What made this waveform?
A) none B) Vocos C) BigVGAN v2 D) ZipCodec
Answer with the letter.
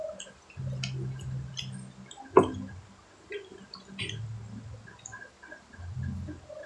A